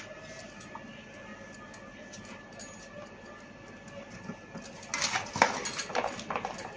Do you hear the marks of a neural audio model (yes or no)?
no